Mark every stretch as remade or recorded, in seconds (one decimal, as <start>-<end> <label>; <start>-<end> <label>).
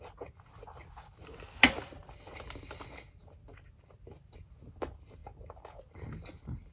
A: 0.0-6.7 recorded